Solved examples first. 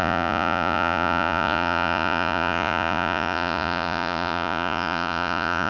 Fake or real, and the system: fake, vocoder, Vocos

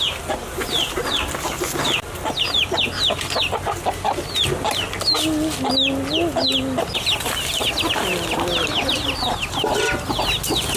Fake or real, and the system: real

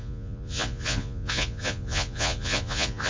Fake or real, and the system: fake, vocoder, Vocos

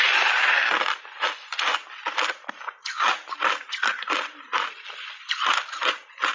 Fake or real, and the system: real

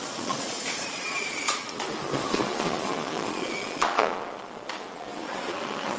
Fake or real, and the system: fake, vocoder, Vocos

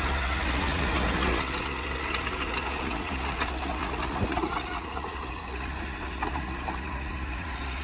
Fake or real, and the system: fake, vocoder, Vocos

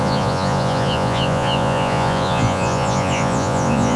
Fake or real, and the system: fake, vocoder, Vocos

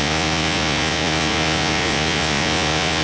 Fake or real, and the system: fake, vocoder, Vocos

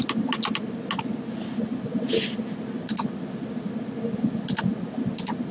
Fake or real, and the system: real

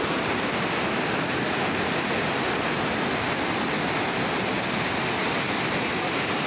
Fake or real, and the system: real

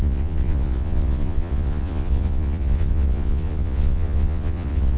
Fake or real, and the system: fake, vocoder, Vocos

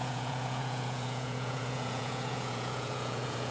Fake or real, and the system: fake, vocoder, Vocos